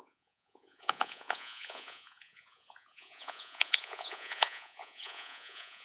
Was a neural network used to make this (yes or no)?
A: yes